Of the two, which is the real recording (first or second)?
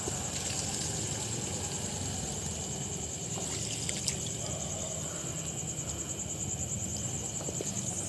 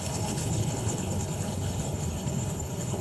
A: first